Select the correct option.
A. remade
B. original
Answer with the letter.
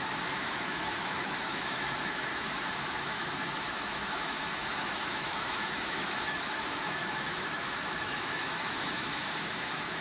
A